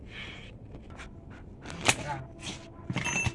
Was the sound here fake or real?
real